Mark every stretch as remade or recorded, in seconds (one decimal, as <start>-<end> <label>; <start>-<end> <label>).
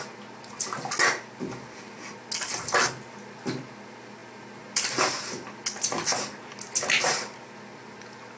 0.0-8.4 recorded